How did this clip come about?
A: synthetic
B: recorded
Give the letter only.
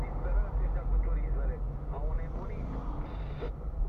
B